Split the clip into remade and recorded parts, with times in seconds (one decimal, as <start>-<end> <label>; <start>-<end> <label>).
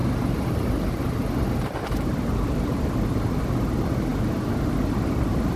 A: 0.0-5.6 recorded